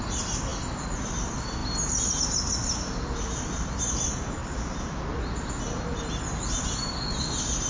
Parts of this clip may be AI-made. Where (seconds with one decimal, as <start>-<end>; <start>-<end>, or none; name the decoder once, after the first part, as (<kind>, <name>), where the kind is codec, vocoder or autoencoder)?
none